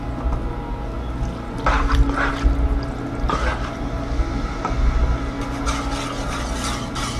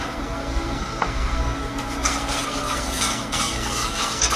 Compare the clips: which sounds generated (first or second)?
second